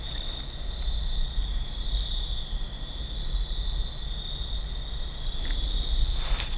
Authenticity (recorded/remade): recorded